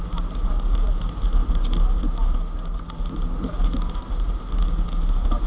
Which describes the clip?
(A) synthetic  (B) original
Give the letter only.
B